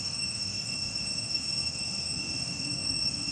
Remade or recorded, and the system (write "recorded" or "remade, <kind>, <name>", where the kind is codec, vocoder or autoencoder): remade, autoencoder, DAC-VAE